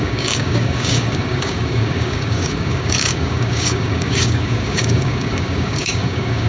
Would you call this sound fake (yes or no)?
yes